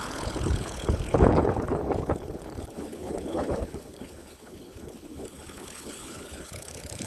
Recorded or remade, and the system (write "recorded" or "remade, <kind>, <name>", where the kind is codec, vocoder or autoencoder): remade, codec, HILCodec